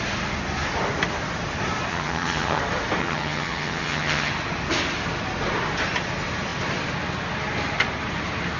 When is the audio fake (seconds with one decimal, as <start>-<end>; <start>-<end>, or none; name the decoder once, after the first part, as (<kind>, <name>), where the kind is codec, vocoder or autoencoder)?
1.9-2.6 (vocoder, HiFi-GAN); 3.0-4.3

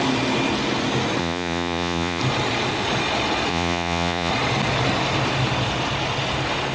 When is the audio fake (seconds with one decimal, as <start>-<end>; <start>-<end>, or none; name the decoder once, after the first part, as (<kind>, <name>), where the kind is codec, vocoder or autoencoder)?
1.2-2.2 (vocoder, Vocos); 3.5-4.3

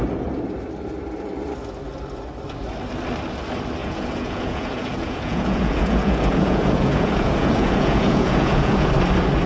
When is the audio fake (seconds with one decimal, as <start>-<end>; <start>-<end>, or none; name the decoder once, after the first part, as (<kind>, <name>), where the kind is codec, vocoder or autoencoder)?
3.8-8.9 (vocoder, Vocos)

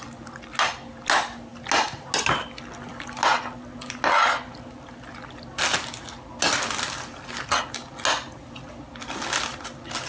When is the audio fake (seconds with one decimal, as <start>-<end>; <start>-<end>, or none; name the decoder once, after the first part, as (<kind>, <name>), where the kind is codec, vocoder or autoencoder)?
none

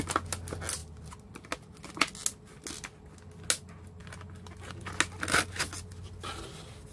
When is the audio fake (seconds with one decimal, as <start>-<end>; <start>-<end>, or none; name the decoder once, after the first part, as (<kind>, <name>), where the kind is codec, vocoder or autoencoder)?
none

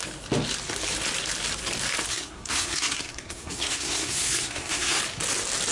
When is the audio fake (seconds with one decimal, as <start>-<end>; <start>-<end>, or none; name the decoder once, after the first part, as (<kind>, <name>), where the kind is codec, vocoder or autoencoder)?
2.1-5.0 (codec, SNAC)